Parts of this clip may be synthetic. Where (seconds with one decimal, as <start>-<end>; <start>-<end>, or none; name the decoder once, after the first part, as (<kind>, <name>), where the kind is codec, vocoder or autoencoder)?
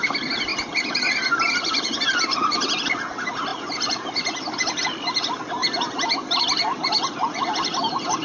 none